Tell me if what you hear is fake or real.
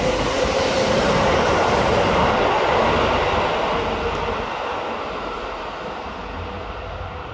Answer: real